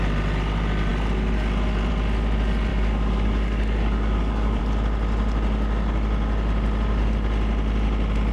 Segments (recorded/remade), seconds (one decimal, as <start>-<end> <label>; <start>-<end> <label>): 0.0-2.7 recorded; 2.7-4.6 remade; 4.6-8.3 recorded